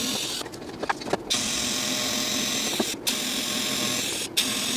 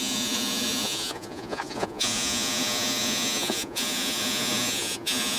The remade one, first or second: second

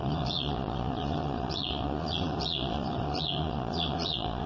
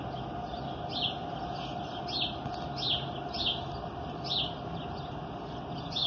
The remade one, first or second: first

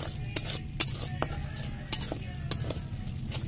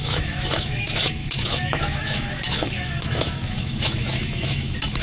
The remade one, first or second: second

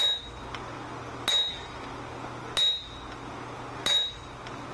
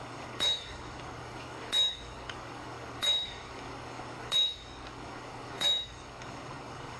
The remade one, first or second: second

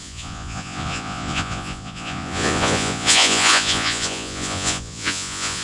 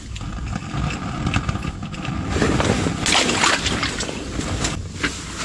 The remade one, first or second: first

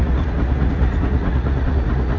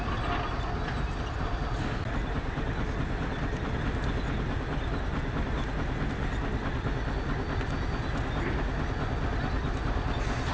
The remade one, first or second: first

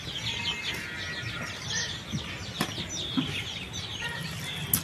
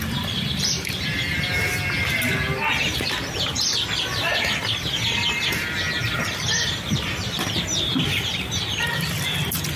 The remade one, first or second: second